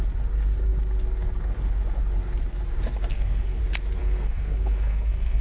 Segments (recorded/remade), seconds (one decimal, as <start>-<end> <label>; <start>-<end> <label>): 0.0-3.1 recorded; 3.1-3.6 remade; 3.6-4.0 recorded; 4.0-5.4 remade